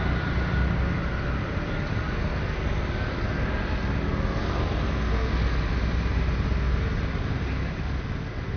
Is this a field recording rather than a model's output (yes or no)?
yes